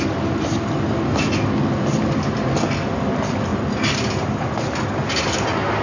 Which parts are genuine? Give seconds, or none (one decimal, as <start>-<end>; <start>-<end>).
0.0-5.8